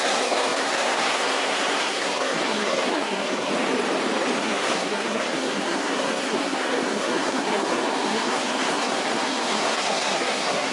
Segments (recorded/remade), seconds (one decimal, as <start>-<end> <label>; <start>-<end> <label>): 0.0-3.5 remade; 3.5-4.4 recorded; 4.4-10.7 remade